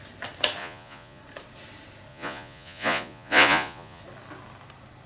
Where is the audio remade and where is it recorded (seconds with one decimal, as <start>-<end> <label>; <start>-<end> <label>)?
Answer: 0.0-0.6 recorded; 0.6-1.2 remade; 1.2-2.1 recorded; 2.1-4.0 remade; 4.0-5.1 recorded